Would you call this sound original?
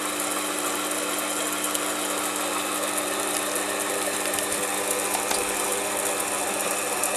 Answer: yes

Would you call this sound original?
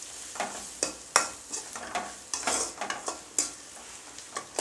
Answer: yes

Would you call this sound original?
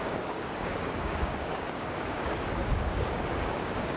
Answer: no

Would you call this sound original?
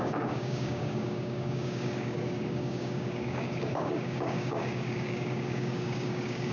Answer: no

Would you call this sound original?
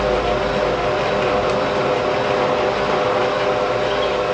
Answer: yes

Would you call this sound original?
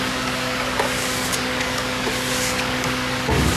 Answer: no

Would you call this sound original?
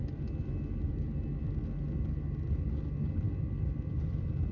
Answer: yes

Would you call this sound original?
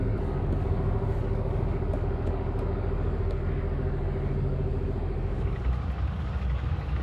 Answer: no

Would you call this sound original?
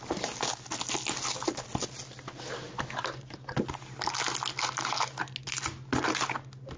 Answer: yes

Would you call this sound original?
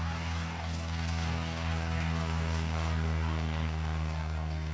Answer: no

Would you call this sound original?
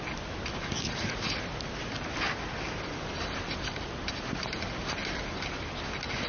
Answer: yes